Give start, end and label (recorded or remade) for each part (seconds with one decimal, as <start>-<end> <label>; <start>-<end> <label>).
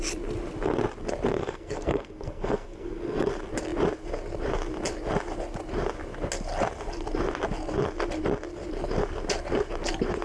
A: 0.0-1.3 recorded; 1.3-3.3 remade; 3.3-10.2 recorded